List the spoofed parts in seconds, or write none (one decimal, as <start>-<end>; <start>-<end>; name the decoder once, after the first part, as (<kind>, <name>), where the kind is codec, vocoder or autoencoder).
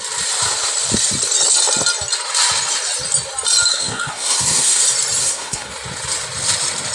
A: 3.7-4.8 (codec, SNAC); 5.2-5.7